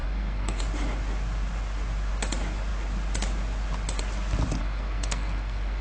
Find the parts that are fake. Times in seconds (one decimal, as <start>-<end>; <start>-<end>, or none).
0.0-0.6; 4.6-5.8